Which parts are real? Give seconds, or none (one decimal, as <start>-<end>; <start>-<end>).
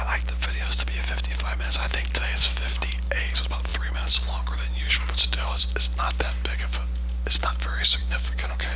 0.0-8.0